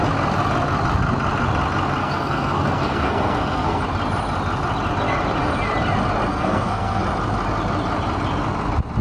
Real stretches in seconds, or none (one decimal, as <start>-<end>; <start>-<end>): 0.0-2.0; 3.8-6.3; 7.0-9.0